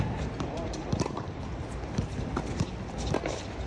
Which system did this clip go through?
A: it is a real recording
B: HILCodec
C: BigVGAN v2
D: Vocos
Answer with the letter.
A